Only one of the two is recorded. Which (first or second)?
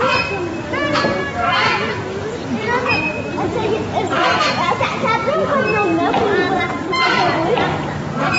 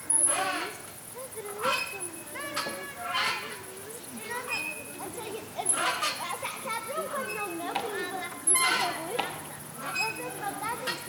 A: second